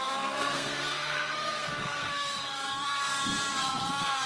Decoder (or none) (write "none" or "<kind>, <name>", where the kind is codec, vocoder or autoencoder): codec, SNAC